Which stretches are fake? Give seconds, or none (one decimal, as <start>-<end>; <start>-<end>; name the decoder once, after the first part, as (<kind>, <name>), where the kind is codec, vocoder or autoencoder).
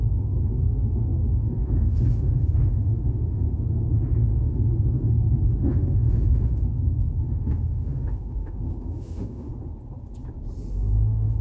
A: 0.0-9.5 (autoencoder, DAC-VAE); 10.7-11.4